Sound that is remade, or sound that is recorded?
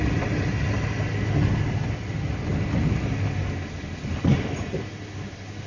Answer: recorded